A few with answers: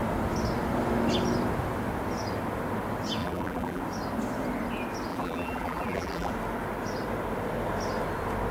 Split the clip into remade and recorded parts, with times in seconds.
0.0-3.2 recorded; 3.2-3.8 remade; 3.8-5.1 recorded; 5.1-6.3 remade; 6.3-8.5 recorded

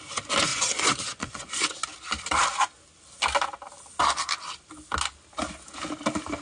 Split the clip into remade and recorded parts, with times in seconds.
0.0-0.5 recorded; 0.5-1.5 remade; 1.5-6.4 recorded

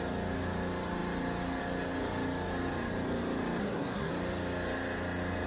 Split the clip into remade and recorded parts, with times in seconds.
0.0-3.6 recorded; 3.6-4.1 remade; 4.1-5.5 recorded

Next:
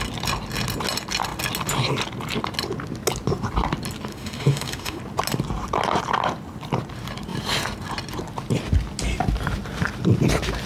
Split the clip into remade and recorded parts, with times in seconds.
0.0-4.1 recorded; 4.1-5.0 remade; 5.0-10.7 recorded